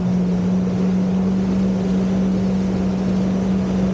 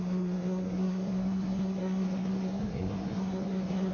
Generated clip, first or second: second